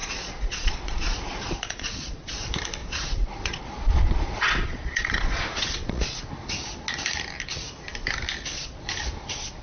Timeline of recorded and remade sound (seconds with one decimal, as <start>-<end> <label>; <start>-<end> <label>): 0.0-2.3 remade; 2.3-2.8 recorded; 2.8-6.2 remade; 6.2-9.6 recorded